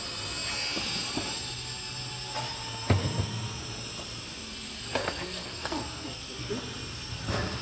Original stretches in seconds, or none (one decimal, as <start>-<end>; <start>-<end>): 0.0-5.0; 6.5-7.6